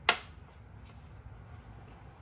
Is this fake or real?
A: real